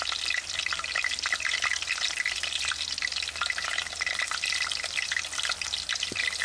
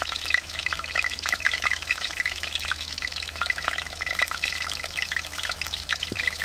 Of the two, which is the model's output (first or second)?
second